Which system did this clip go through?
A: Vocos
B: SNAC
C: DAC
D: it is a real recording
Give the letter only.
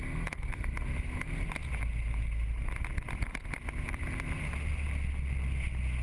D